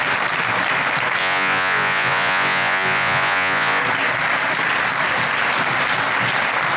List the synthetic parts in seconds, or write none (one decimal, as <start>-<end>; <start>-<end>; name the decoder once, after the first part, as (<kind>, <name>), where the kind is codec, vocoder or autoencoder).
1.2-3.8 (vocoder, Vocos)